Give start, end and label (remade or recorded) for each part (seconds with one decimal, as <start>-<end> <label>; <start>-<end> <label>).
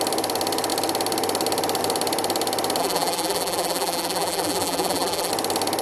0.0-2.8 recorded; 2.8-5.3 remade; 5.3-5.8 recorded